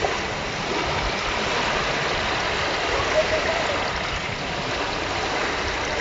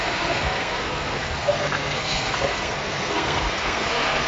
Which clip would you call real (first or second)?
first